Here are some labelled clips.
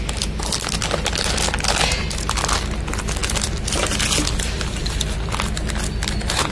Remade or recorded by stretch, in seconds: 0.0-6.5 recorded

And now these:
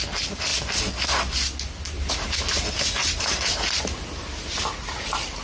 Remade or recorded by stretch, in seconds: 0.0-3.0 recorded; 3.0-3.8 remade; 3.8-5.4 recorded

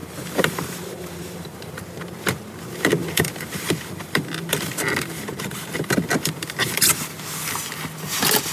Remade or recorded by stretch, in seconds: 0.0-1.8 remade; 1.8-3.0 recorded; 3.0-7.1 remade; 7.1-8.5 recorded